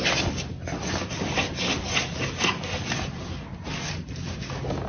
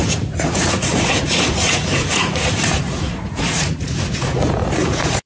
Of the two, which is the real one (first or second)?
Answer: first